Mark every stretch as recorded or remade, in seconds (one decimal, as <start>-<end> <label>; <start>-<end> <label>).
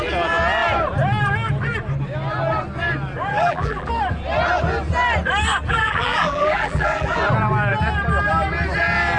0.0-3.3 recorded; 3.3-3.9 remade; 3.9-5.7 recorded; 5.7-7.2 remade; 7.2-9.2 recorded